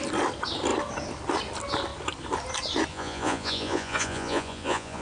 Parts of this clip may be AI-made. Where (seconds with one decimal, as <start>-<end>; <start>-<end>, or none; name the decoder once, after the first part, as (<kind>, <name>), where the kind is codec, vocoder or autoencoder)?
2.9-5.0 (vocoder, Vocos)